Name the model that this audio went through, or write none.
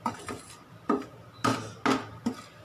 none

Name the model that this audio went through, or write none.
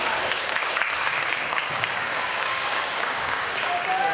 codec, DAC